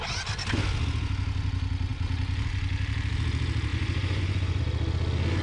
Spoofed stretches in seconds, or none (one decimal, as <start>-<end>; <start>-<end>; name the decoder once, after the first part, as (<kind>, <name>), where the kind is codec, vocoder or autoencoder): 3.7-4.6 (vocoder, Vocos)